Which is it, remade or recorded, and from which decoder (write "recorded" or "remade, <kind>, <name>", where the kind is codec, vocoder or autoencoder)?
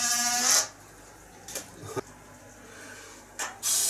recorded